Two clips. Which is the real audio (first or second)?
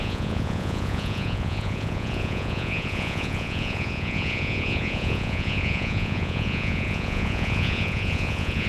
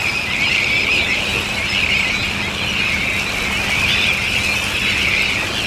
second